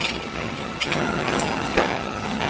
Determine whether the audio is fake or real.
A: fake